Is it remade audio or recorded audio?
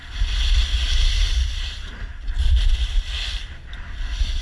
recorded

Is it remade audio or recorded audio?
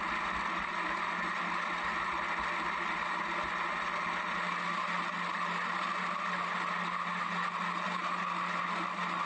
recorded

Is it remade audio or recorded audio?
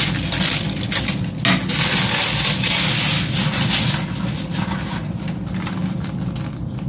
recorded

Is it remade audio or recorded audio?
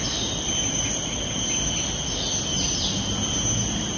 recorded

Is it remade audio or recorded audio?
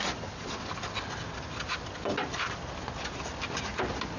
recorded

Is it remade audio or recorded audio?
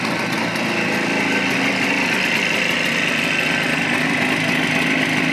recorded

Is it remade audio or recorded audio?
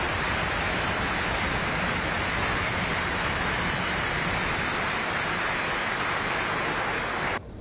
recorded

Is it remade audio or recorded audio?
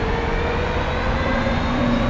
remade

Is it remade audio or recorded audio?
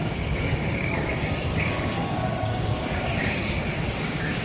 remade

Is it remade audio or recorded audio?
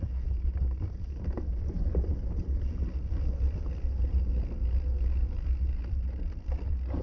recorded